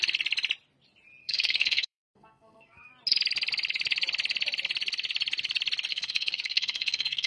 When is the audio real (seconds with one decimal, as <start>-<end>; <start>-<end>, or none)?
0.0-1.2; 2.9-5.9